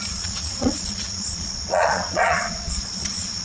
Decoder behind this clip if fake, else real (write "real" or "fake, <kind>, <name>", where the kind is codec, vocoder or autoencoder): fake, vocoder, Vocos